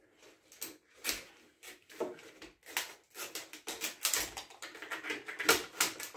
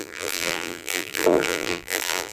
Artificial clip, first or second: second